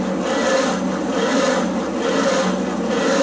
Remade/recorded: recorded